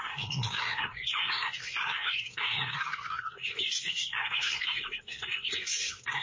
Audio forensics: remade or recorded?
remade